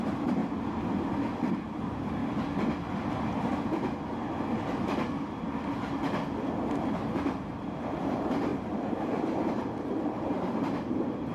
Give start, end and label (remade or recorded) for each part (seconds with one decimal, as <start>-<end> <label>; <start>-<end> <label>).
0.0-0.4 remade; 0.4-1.5 recorded; 1.5-2.2 remade; 2.2-6.9 recorded; 6.9-11.3 remade